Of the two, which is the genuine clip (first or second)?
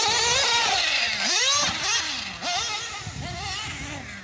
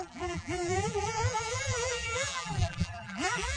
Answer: first